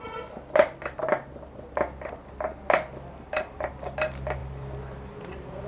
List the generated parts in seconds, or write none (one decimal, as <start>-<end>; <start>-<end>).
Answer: none